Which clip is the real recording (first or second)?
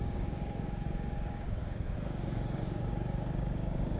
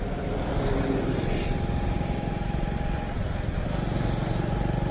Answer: second